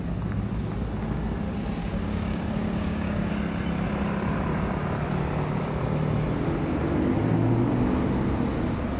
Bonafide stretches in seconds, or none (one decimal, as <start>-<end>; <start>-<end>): 0.0-1.8; 3.3-9.0

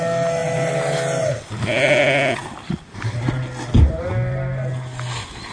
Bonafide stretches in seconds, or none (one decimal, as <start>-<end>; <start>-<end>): 0.0-5.5

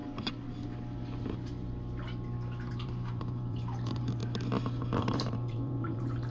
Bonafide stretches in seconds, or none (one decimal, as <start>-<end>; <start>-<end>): 0.0-2.7; 4.2-5.0

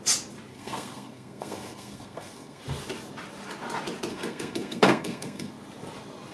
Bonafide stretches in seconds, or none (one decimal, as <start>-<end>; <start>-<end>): 0.0-0.5; 2.6-4.1; 5.5-6.3

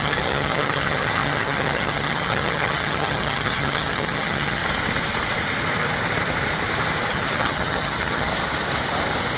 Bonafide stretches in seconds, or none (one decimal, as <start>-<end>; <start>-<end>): 4.6-7.1; 8.3-9.4

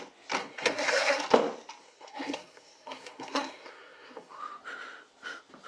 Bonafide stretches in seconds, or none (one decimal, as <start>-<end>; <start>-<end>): 0.0-0.4; 1.2-1.8; 4.4-5.7

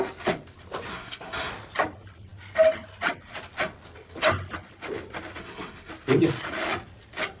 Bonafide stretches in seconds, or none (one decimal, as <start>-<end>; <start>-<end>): 0.0-0.9; 1.5-5.4; 5.9-7.4

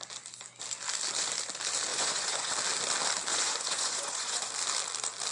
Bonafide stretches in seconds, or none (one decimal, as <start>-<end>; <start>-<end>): 0.0-1.9; 2.5-3.3; 4.5-5.3